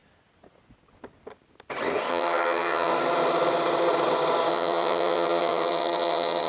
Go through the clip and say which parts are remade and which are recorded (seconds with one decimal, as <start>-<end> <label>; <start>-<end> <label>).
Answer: 0.0-2.1 recorded; 2.1-2.9 remade; 2.9-4.5 recorded; 4.5-6.5 remade